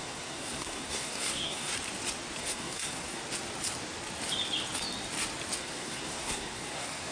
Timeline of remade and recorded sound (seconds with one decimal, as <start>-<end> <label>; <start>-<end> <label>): 0.0-1.7 remade; 1.7-2.4 recorded; 2.4-3.2 remade; 3.2-5.6 recorded; 5.6-7.1 remade